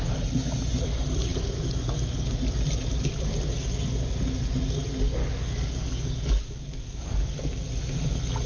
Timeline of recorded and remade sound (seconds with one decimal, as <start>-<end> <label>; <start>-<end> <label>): 0.0-5.2 recorded; 5.2-7.3 remade; 7.3-8.5 recorded

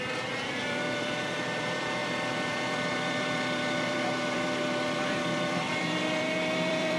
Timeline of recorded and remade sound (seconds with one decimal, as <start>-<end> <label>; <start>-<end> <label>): 0.0-7.0 remade